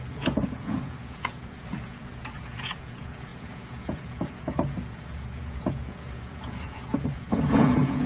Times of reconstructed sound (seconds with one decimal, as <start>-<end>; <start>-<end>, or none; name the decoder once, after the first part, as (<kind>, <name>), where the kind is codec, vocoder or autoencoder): 0.0-8.1 (vocoder, Vocos)